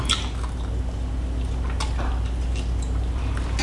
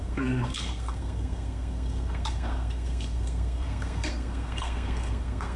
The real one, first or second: first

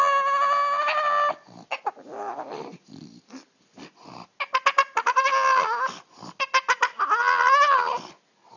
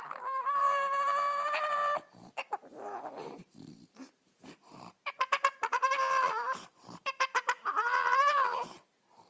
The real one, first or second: first